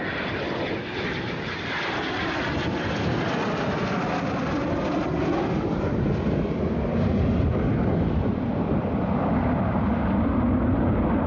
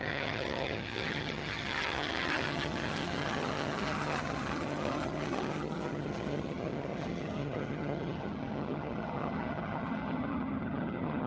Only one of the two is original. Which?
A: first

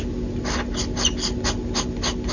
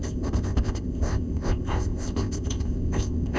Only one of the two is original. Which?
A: first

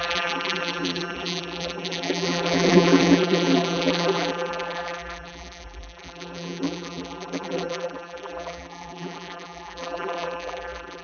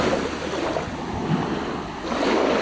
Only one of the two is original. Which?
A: second